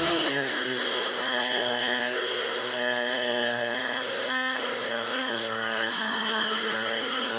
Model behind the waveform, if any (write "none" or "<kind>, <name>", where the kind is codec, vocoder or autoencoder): codec, SNAC